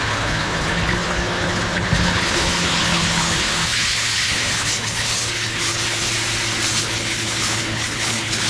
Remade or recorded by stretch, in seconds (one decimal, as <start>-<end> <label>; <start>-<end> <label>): 0.0-6.1 remade; 6.1-6.7 recorded; 6.7-8.5 remade

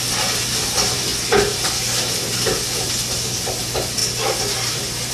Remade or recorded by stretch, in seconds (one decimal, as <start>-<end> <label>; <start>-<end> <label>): 0.0-5.1 recorded